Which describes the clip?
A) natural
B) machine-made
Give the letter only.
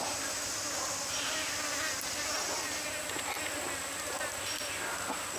A